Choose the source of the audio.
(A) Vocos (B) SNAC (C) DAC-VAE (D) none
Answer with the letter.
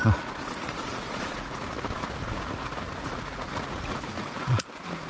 A